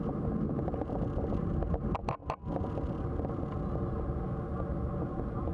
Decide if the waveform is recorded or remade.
recorded